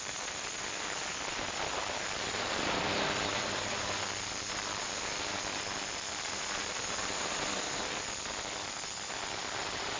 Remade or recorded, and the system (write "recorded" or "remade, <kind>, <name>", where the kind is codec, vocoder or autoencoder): remade, vocoder, BigVGAN v2